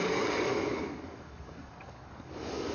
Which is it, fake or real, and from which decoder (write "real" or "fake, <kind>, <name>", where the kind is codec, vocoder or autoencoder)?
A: fake, codec, DAC